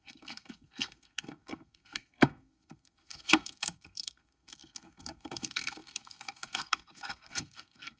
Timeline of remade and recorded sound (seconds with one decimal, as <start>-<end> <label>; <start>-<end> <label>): 0.0-8.0 remade